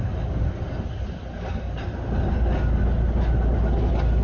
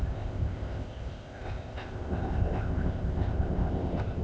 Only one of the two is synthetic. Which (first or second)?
second